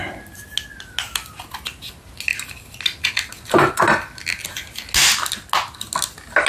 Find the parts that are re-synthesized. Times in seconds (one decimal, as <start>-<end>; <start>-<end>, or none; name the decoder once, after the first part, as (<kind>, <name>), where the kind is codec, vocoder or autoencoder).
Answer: none